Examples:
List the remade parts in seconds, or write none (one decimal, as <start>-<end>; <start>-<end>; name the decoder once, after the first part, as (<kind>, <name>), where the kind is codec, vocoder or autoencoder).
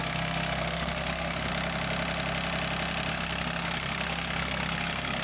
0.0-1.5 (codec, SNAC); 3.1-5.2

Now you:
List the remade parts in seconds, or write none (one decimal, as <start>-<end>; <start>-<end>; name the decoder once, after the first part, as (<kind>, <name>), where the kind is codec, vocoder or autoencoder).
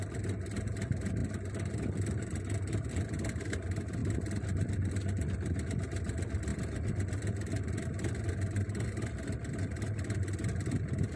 4.0-4.9 (vocoder, BigVGAN v2); 6.5-7.3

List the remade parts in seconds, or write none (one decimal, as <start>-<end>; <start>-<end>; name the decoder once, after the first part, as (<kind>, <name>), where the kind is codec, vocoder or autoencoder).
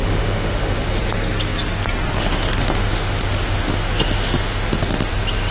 0.0-1.0 (autoencoder, DAC-VAE); 2.2-5.1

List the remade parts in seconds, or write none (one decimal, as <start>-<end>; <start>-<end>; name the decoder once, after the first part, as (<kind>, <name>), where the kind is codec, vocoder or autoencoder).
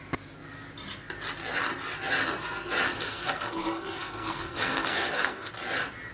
2.9-5.5 (codec, SNAC)